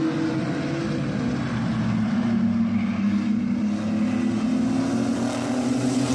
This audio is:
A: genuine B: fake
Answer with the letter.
A